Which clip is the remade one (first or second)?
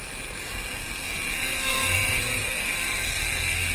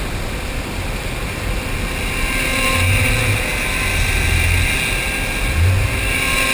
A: first